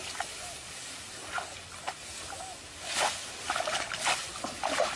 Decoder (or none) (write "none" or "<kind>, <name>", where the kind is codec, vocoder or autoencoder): none